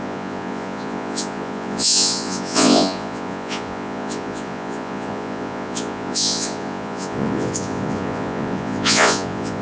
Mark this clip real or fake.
fake